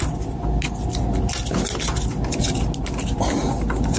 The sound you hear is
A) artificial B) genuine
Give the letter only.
B